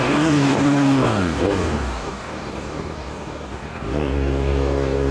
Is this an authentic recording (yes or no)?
no